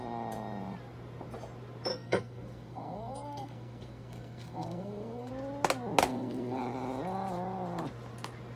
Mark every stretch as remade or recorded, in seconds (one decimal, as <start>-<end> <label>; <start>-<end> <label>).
0.0-1.9 recorded; 1.9-5.3 remade; 5.3-6.1 recorded; 6.1-6.6 remade; 6.6-8.6 recorded